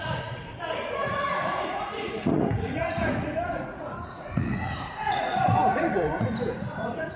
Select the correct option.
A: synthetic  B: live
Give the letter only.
A